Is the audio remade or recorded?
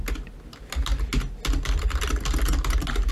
recorded